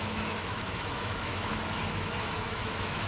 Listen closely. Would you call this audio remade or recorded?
remade